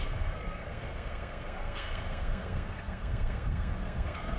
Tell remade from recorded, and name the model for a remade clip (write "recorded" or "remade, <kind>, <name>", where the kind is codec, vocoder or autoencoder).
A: remade, codec, SNAC